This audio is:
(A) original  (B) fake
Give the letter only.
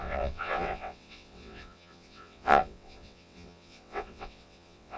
B